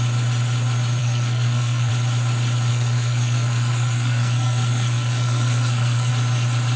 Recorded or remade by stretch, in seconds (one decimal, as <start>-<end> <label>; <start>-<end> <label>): 0.0-1.0 recorded; 1.0-1.9 remade; 1.9-2.7 recorded; 2.7-6.1 remade; 6.1-6.8 recorded